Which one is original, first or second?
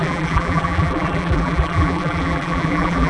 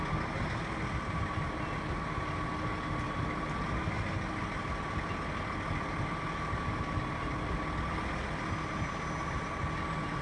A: second